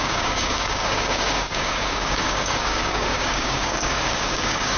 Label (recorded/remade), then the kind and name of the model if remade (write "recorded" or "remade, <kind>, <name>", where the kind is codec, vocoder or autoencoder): remade, codec, DAC